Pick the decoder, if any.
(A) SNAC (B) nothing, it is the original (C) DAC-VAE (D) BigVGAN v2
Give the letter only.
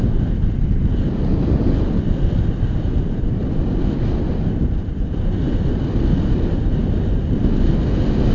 B